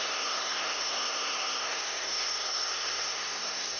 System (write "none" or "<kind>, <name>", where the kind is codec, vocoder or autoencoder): codec, SNAC